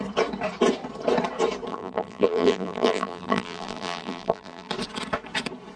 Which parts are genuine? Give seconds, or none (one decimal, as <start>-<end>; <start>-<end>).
0.0-1.7; 4.7-5.8